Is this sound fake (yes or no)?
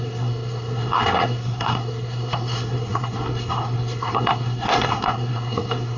yes